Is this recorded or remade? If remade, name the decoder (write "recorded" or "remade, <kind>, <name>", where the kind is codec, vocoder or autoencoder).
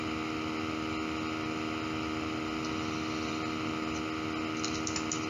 recorded